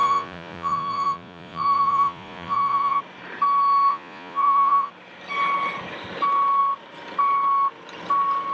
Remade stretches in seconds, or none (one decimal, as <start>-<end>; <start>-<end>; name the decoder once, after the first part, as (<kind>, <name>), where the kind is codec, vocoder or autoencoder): 0.0-3.0 (vocoder, Vocos); 3.9-4.9